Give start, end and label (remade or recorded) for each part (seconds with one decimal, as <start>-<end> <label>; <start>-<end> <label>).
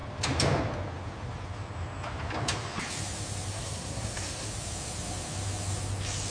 0.0-3.5 recorded; 3.5-4.5 remade; 4.5-6.3 recorded